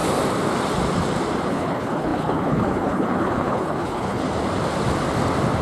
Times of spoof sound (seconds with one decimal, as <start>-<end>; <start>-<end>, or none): 1.5-4.2